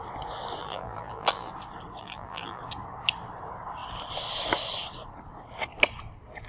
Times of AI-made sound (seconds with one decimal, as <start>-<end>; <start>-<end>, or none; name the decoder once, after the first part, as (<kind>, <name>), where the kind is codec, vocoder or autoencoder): 0.6-1.5 (vocoder, BigVGAN v2); 2.0-2.6